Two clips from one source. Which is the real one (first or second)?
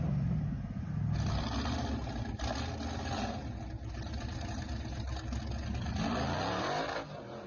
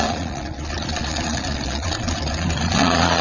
first